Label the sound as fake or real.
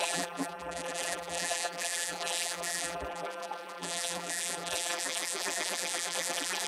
fake